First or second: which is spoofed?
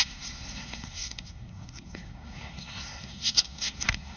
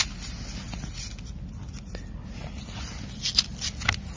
first